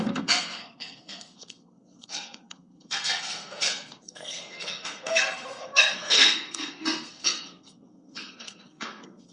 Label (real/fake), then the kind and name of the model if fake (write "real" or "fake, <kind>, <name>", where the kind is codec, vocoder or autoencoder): fake, codec, SNAC